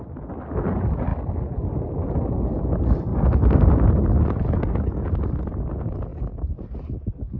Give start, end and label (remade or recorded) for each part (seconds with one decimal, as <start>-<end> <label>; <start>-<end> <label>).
0.0-7.4 recorded